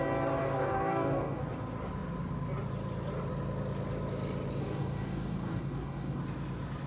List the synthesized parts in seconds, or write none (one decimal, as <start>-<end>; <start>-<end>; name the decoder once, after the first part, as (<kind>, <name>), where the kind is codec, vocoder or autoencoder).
0.4-1.4 (codec, DAC); 4.6-6.2